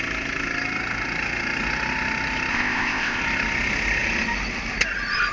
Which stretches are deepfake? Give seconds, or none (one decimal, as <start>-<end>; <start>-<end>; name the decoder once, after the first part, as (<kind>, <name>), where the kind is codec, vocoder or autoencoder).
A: 2.5-3.2 (codec, ZipCodec)